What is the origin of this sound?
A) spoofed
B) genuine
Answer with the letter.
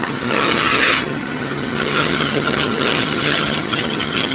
A